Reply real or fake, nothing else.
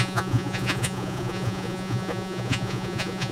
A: fake